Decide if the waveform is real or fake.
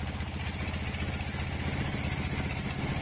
real